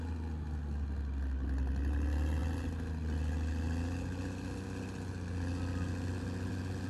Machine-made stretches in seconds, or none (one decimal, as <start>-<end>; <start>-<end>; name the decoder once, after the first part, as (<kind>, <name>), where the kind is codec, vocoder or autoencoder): none